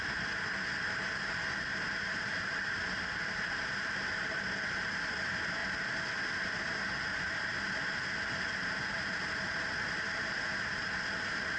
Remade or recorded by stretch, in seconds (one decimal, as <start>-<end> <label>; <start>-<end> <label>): 0.0-11.6 recorded